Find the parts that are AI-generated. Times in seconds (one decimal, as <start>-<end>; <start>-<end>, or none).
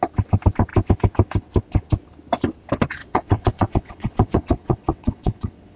3.0-5.8